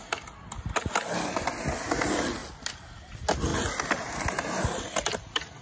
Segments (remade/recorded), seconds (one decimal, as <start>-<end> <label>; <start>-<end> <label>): 0.0-5.6 recorded